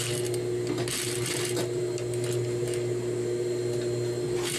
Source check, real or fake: real